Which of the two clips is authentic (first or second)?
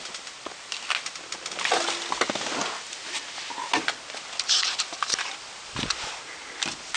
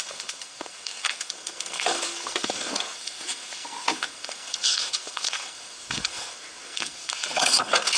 first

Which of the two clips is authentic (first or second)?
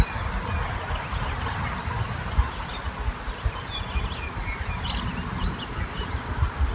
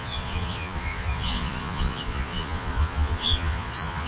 first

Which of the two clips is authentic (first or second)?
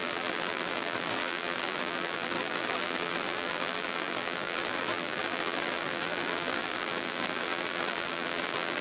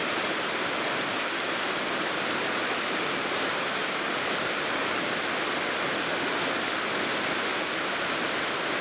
second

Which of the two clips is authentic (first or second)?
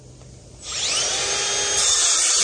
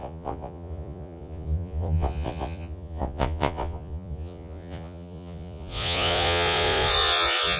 first